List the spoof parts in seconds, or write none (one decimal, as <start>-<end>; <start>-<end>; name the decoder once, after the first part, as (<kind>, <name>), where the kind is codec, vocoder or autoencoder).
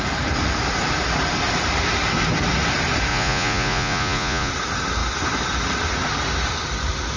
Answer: 3.1-4.5 (vocoder, Vocos)